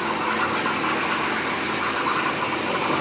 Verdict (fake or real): real